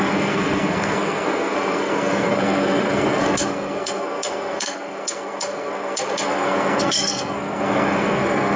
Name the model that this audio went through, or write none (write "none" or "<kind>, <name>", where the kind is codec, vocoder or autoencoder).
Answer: codec, SNAC